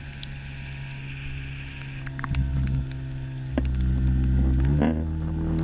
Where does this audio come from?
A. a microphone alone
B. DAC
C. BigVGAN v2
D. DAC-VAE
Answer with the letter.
A